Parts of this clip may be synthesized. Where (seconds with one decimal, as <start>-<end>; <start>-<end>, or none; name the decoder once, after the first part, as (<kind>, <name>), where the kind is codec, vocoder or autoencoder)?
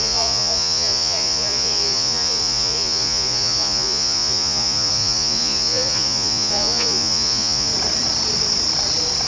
0.0-7.7 (vocoder, Vocos)